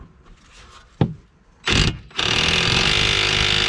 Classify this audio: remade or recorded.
recorded